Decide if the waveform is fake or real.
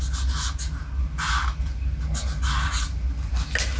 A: real